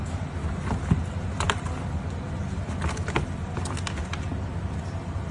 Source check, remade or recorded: recorded